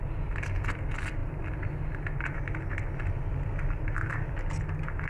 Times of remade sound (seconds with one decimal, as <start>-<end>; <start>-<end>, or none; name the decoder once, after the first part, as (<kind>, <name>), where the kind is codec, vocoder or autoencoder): none

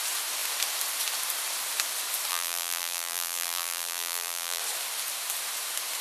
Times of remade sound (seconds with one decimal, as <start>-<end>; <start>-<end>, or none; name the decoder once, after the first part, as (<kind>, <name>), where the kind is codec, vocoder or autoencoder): 2.3-4.6 (vocoder, BigVGAN v2)

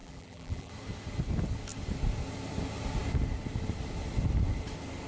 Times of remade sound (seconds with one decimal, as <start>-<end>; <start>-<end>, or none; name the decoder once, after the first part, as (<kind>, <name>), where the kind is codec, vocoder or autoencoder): 0.0-0.7 (vocoder, BigVGAN v2)

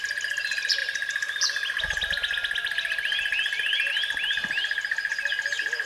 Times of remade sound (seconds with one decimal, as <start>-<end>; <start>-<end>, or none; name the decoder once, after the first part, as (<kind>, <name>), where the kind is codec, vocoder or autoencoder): none

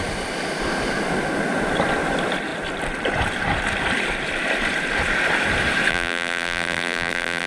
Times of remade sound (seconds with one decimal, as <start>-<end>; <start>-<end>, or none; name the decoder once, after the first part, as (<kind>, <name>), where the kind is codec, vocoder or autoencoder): 5.9-7.5 (vocoder, BigVGAN v2)

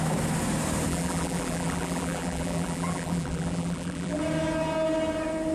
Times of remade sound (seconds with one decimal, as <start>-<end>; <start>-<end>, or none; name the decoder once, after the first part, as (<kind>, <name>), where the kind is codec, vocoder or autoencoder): 0.9-4.2 (vocoder, BigVGAN v2)